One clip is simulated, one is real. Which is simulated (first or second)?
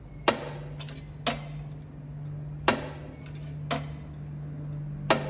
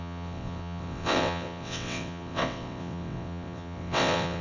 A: second